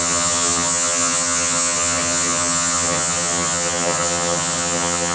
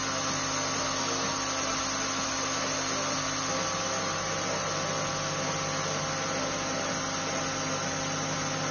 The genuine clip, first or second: second